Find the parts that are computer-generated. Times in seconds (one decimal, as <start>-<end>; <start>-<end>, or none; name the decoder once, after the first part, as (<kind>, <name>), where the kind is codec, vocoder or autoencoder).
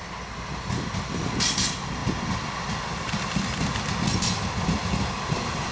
none